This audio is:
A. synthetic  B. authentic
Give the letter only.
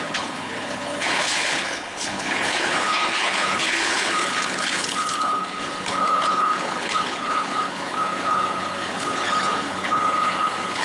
A